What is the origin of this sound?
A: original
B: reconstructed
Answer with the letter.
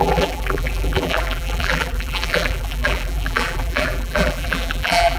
B